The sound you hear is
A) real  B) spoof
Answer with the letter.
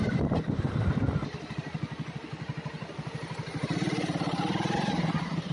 A